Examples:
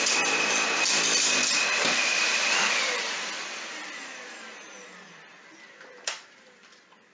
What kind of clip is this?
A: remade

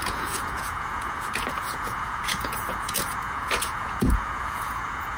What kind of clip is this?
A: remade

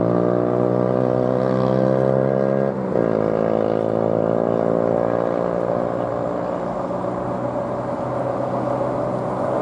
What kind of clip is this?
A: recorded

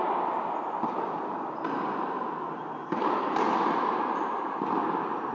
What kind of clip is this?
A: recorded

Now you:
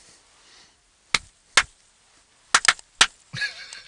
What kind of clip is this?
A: recorded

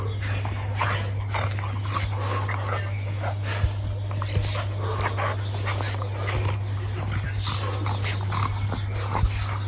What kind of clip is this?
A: recorded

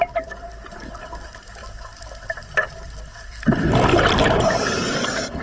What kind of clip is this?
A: remade